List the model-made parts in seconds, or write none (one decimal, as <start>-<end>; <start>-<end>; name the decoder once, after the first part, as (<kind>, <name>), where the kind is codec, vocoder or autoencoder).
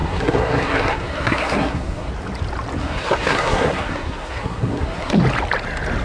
0.0-2.1 (codec, SNAC); 2.8-5.2